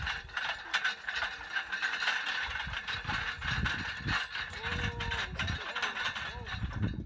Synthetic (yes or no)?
no